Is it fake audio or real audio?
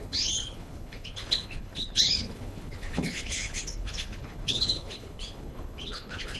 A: fake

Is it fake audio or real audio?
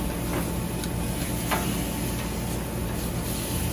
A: real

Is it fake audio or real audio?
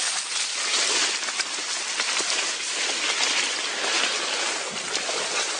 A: real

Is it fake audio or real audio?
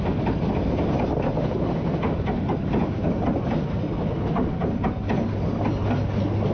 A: real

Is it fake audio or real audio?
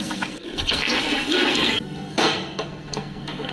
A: fake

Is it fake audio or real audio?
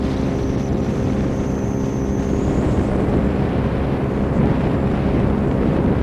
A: real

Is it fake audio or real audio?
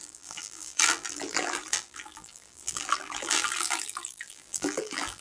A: fake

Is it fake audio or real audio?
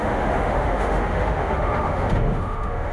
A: fake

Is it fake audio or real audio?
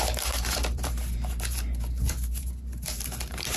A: fake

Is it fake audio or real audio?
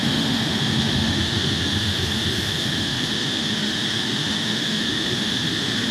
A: fake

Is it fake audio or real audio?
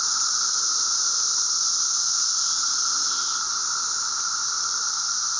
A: real